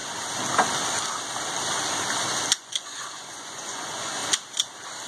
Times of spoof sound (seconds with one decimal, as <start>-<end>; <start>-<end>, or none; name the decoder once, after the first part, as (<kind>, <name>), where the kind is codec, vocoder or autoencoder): 2.6-4.2 (vocoder, Vocos)